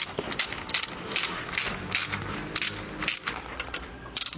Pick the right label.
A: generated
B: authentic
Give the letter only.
B